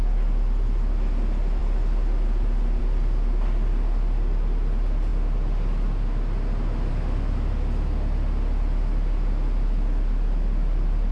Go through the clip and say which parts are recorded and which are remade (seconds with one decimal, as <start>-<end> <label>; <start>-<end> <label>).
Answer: 0.0-11.1 recorded